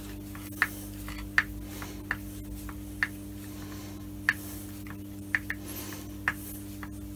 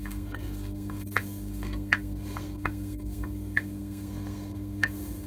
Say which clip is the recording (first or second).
first